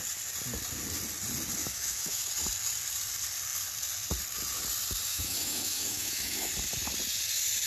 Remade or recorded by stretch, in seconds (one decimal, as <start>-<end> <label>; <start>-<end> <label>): 0.0-1.6 recorded; 1.6-2.3 remade; 2.3-5.1 recorded; 5.1-6.5 remade; 6.5-7.7 recorded